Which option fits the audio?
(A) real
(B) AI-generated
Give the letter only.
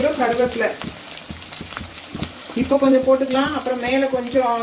B